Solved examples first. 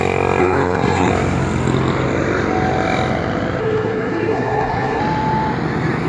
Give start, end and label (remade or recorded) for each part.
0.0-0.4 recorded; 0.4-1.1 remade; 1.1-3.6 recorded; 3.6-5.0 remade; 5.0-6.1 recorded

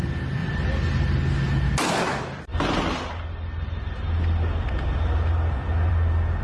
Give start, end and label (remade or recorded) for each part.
0.0-6.4 recorded

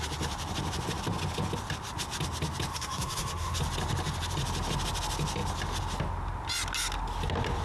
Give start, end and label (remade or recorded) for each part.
0.0-2.7 recorded; 2.7-3.6 remade; 3.6-7.6 recorded

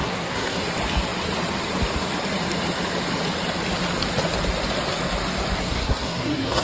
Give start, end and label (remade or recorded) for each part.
0.0-0.6 remade; 0.6-5.6 recorded; 5.6-6.6 remade